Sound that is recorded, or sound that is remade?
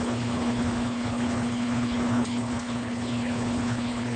remade